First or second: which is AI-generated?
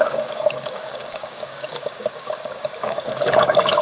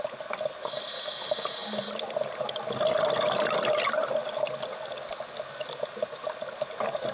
first